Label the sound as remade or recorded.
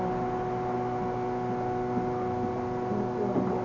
recorded